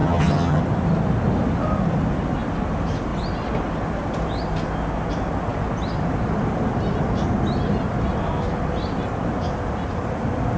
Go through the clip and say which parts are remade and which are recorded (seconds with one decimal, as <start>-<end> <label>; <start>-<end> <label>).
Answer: 0.0-0.6 remade; 0.6-10.6 recorded